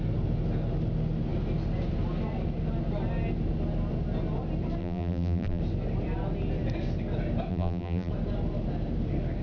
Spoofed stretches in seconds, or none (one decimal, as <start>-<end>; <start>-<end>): 4.8-5.6; 7.5-8.1